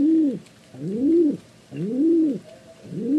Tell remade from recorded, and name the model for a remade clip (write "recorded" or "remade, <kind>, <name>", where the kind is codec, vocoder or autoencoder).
recorded